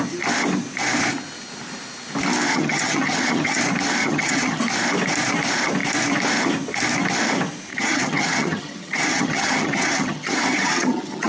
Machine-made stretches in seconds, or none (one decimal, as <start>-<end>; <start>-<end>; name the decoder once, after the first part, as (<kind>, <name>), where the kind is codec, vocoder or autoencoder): 2.5-3.6 (vocoder, HiFi-GAN); 4.0-4.6; 7.7-11.3

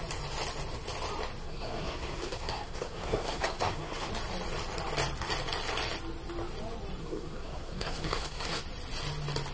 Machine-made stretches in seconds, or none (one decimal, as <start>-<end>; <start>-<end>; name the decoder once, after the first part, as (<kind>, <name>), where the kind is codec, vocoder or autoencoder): 1.4-4.1 (codec, SNAC); 7.0-8.6

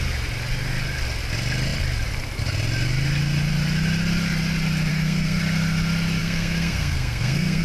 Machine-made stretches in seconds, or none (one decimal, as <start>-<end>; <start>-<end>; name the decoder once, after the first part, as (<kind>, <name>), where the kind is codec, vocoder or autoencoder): 4.9-5.4 (codec, SNAC); 6.2-7.6

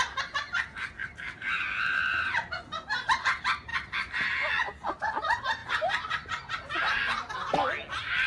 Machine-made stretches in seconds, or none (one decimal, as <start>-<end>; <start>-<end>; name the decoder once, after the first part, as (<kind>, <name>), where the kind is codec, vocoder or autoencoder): 1.0-2.5 (vocoder, BigVGAN v2); 3.7-4.5

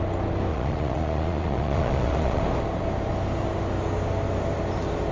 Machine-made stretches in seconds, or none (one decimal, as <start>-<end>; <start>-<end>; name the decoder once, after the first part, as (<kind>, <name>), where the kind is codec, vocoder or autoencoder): 0.5-2.4 (vocoder, Vocos)